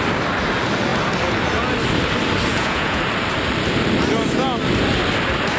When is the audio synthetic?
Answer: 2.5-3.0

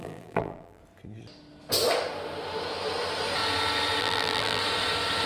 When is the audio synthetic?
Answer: 0.0-0.8; 4.0-4.6

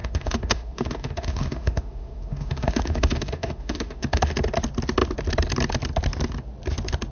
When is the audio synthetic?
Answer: 0.0-4.3

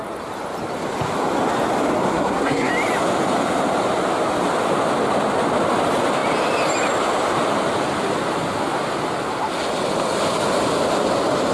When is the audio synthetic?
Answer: 2.1-2.7

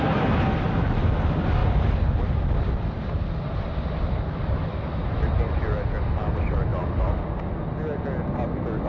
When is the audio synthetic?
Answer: none

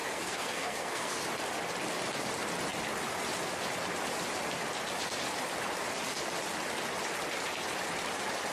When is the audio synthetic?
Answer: 0.0-1.2